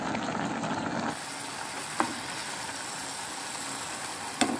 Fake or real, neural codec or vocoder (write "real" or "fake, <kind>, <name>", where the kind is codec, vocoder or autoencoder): real